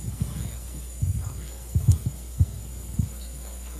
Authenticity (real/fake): fake